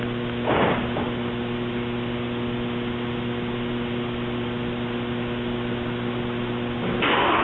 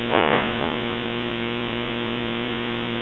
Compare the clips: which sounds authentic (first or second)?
first